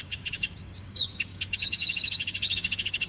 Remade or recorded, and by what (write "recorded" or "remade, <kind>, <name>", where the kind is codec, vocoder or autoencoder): remade, codec, DAC